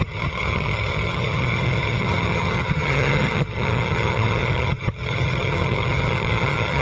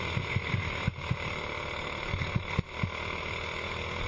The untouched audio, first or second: second